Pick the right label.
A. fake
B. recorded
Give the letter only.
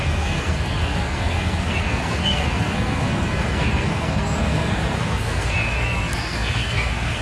A